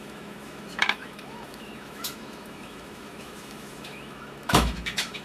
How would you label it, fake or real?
fake